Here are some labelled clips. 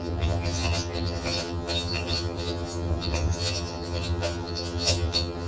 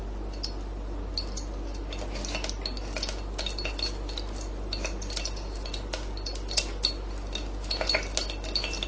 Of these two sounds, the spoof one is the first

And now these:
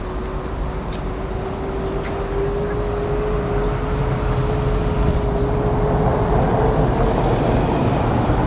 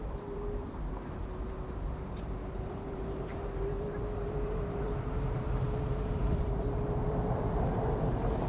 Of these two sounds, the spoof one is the second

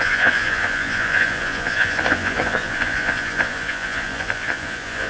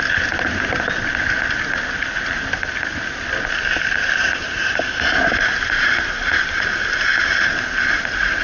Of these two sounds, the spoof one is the first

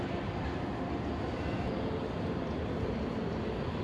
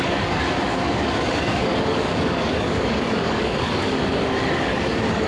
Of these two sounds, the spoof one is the second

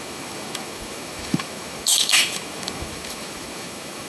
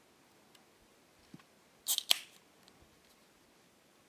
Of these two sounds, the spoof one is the first